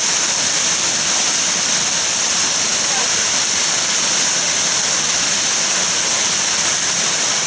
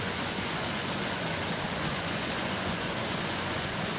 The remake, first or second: second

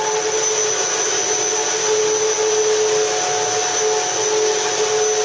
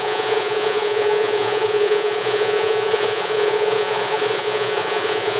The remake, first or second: second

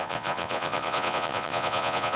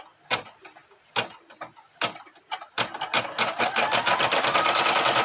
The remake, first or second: first